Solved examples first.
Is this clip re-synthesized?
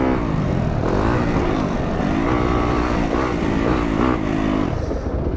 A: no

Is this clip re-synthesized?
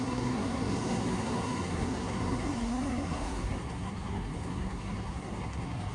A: yes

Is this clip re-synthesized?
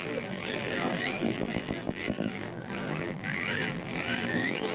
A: yes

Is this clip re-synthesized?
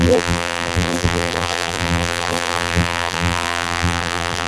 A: yes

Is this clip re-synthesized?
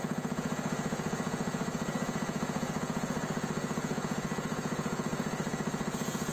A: yes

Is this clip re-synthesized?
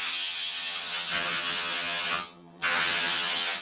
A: yes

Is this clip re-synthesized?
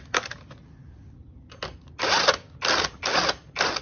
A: no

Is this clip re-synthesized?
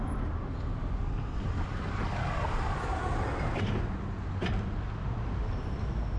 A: no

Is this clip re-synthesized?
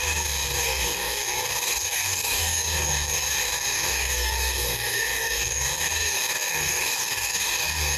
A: yes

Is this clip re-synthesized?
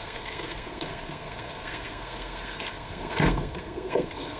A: yes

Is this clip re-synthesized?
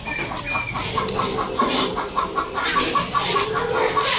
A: no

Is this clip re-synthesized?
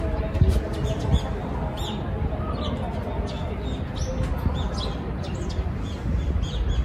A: no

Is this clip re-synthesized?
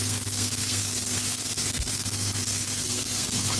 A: yes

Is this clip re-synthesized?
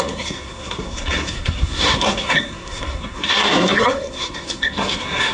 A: yes